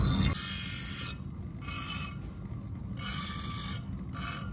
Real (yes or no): yes